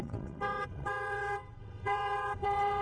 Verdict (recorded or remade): remade